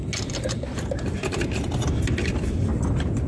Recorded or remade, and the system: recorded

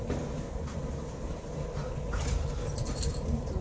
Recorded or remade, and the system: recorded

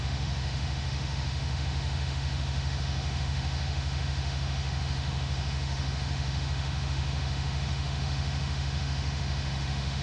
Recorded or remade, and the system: remade, autoencoder, DAC-VAE